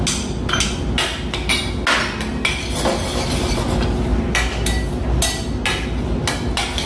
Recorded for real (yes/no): yes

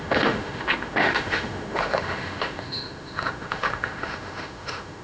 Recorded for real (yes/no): no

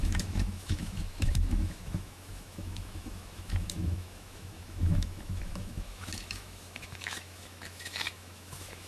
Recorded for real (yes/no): no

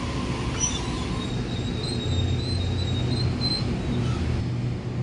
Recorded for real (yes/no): yes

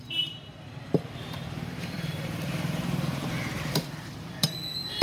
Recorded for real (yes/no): no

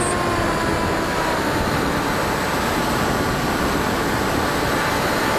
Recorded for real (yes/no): yes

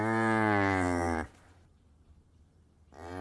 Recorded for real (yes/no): no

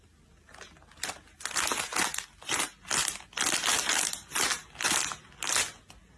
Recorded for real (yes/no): yes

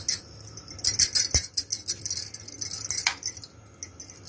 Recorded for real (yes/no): yes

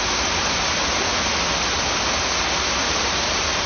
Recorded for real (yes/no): yes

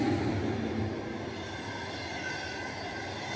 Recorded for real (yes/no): yes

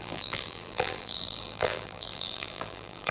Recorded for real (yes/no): no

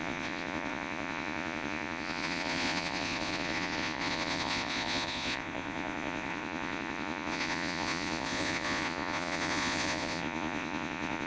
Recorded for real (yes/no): no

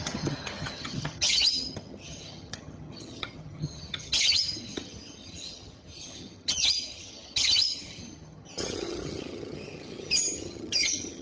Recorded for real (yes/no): no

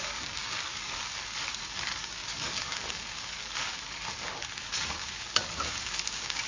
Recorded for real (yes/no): no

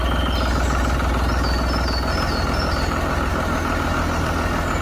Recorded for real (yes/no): yes